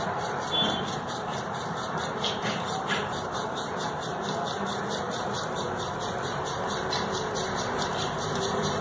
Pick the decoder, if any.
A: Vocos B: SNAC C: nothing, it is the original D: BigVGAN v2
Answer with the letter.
D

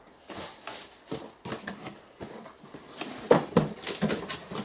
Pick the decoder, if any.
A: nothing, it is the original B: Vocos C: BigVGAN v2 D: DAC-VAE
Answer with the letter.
A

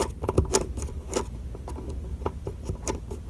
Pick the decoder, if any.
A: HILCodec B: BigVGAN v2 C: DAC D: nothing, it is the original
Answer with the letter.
D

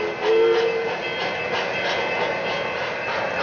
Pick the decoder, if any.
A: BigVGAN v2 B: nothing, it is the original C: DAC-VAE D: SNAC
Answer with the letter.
B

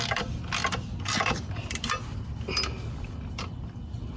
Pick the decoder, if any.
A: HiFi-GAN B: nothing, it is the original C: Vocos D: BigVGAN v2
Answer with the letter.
B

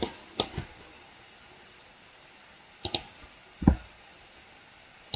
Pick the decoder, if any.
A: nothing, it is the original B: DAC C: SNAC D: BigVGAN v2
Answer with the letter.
D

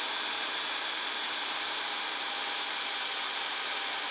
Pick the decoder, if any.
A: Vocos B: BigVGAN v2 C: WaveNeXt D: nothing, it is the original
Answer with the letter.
B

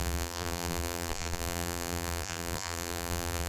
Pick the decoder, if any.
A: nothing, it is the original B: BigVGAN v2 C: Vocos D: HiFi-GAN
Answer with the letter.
B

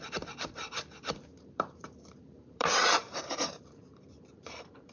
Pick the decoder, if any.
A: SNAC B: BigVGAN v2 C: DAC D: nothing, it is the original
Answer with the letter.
B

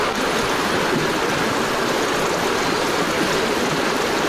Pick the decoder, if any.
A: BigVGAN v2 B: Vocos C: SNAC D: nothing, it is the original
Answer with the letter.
D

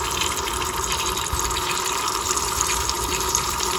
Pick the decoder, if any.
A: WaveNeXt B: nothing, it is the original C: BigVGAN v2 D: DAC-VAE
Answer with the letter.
C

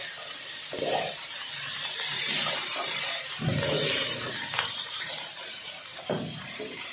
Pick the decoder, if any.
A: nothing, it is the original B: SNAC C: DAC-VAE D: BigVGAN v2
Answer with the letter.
D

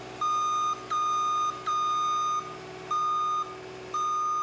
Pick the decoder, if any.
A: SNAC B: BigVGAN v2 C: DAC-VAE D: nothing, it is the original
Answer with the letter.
D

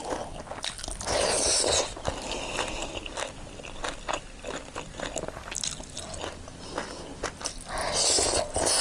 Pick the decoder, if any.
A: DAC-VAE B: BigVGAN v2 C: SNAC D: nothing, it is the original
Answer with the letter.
D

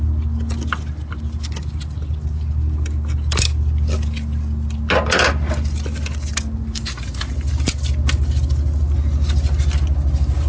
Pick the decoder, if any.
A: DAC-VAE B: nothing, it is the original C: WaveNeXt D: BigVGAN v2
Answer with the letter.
B